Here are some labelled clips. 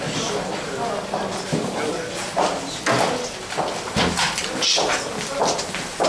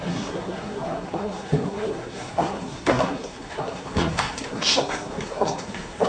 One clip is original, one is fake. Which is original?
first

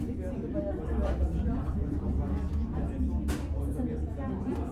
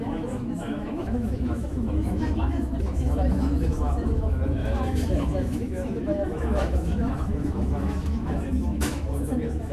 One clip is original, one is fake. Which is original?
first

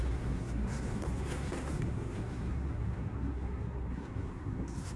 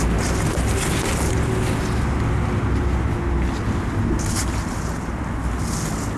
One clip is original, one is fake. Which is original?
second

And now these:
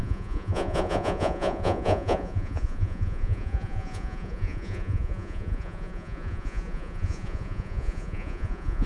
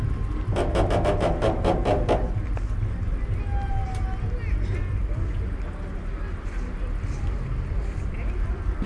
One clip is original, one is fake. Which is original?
second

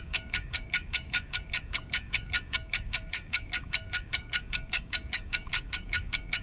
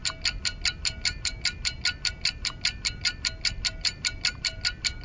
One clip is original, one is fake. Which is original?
second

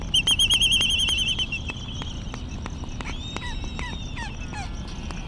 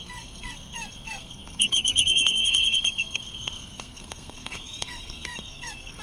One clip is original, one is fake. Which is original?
first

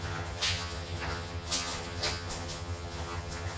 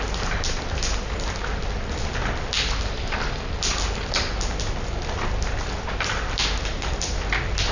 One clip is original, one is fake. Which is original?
second